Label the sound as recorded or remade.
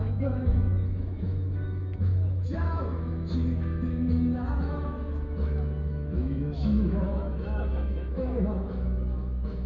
remade